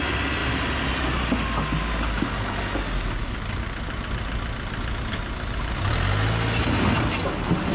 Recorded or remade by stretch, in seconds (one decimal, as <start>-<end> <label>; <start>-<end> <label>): 0.0-7.7 recorded